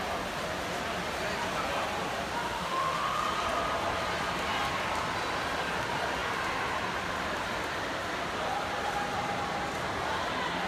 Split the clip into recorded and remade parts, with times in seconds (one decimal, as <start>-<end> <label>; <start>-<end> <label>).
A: 0.0-2.4 recorded; 2.4-3.2 remade; 3.2-10.7 recorded